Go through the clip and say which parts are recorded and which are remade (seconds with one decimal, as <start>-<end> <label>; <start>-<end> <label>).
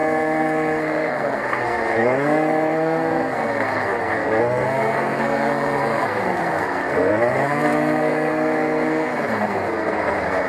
0.0-10.5 remade